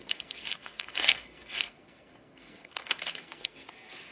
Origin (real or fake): fake